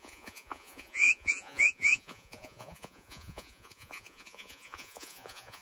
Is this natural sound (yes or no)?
no